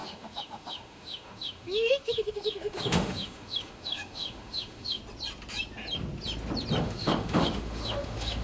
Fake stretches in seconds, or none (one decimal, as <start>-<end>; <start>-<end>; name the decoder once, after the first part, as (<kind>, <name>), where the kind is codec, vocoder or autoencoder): 0.0-5.0 (autoencoder, DAC-VAE); 6.8-8.4